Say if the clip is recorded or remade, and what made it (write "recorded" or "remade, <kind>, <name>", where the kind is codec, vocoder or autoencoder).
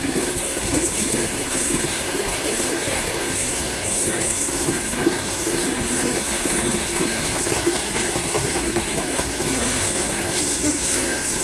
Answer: remade, codec, SNAC